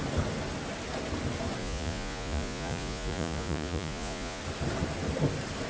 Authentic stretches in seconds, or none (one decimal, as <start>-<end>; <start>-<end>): 0.0-1.6; 4.4-5.7